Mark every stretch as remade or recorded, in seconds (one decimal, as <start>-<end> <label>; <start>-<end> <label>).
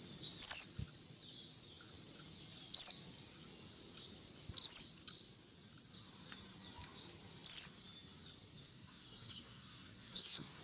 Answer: 0.0-8.7 recorded; 8.7-10.6 remade